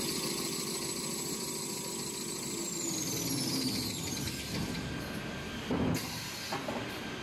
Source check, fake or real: real